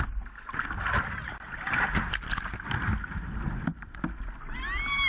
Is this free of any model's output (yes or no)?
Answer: yes